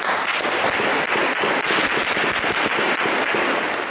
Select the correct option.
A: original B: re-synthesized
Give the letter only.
A